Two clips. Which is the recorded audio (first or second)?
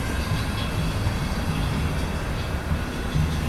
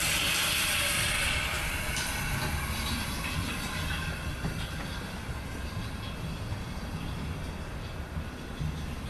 first